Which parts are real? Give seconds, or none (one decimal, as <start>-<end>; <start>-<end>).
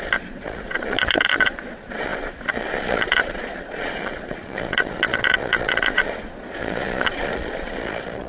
none